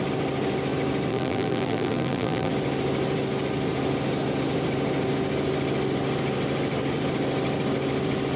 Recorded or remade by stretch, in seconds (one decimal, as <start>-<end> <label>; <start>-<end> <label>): 0.0-1.1 recorded; 1.1-2.5 remade; 2.5-8.4 recorded